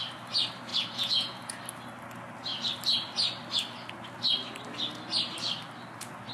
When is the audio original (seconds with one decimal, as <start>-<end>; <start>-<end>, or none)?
0.0-0.7; 1.5-6.3